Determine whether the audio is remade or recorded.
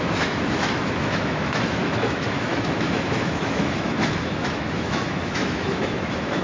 remade